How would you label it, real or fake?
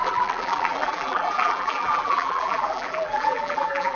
fake